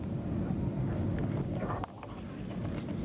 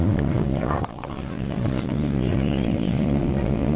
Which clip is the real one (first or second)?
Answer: first